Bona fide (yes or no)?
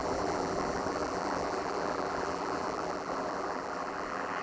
no